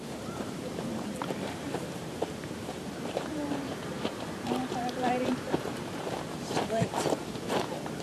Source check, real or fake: fake